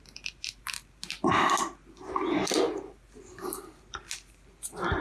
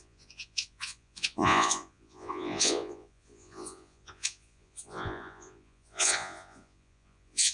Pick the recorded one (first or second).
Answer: first